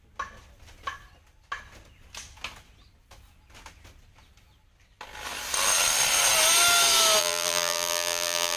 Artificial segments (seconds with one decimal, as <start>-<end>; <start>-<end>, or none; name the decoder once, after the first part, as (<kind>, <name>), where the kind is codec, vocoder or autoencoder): 7.2-8.6 (vocoder, BigVGAN v2)